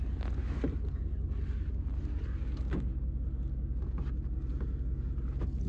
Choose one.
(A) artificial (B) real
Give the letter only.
B